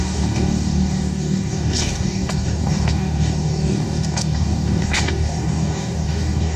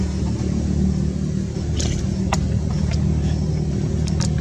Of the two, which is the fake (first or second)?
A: first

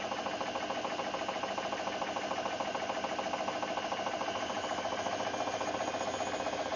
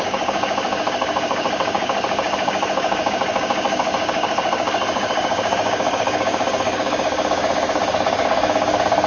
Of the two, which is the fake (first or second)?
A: second